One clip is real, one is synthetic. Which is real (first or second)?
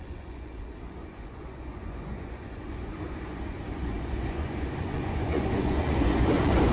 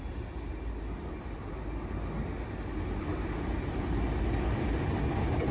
second